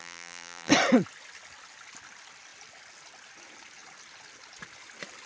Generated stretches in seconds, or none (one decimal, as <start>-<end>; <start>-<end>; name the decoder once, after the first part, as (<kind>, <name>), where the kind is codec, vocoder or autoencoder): 0.0-0.7 (vocoder, BigVGAN v2)